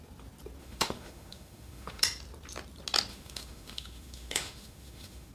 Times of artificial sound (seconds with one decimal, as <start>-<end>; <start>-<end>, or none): 0.6-2.0; 3.1-5.3